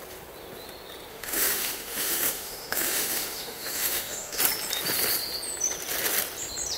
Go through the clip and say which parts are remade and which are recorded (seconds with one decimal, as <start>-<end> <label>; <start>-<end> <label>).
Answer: 0.0-1.1 recorded; 1.1-4.4 remade; 4.4-6.8 recorded